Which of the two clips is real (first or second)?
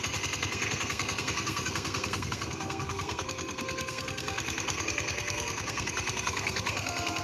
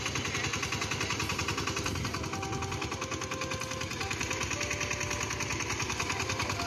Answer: second